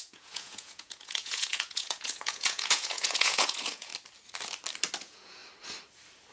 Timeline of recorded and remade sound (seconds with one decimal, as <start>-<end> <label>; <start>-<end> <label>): 0.0-3.9 remade; 3.9-5.0 recorded; 5.0-5.4 remade; 5.4-6.3 recorded

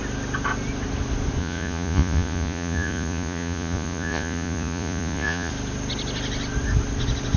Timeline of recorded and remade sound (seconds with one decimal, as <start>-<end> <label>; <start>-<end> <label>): 0.0-1.4 recorded; 1.4-5.5 remade; 5.5-7.4 recorded

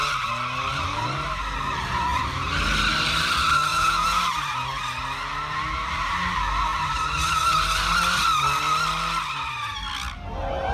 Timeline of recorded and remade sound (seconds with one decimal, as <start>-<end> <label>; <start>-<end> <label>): 0.0-3.7 recorded; 3.7-4.2 remade; 4.2-10.7 recorded

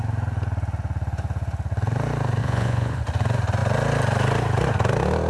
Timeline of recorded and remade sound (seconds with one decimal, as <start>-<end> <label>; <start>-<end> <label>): 0.0-2.4 recorded; 2.4-3.0 remade; 3.0-5.3 recorded

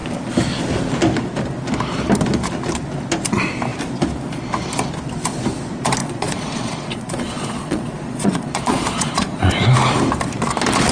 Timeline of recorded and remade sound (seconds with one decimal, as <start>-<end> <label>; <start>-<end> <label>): 0.0-6.0 recorded; 6.0-9.5 remade; 9.5-10.9 recorded

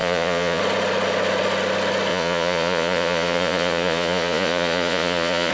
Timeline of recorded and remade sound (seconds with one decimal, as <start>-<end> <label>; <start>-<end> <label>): 0.0-0.6 remade; 0.6-2.1 recorded; 2.1-5.5 remade

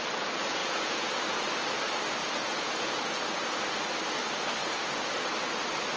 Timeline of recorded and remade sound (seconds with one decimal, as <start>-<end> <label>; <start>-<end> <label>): 0.0-0.6 recorded; 0.6-1.5 remade; 1.5-2.2 recorded; 2.2-3.6 remade; 3.6-4.6 recorded; 4.6-5.3 remade; 5.3-6.0 recorded